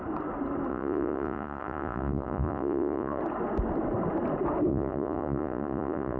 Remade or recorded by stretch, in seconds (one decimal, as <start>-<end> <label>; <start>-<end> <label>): 0.0-0.7 recorded; 0.7-3.2 remade; 3.2-4.7 recorded; 4.7-6.2 remade